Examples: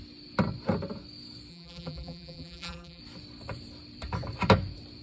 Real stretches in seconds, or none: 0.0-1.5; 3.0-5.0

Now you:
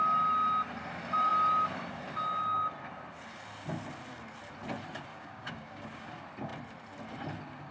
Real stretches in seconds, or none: 0.0-5.1; 6.1-7.7

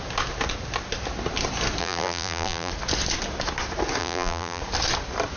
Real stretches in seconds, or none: 0.0-1.8; 2.7-4.0; 4.6-5.4

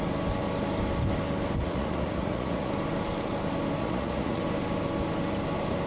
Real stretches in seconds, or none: 0.0-1.6; 2.7-3.8; 4.4-5.9

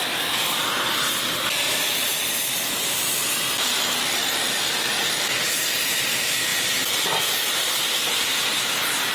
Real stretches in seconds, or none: 0.0-9.1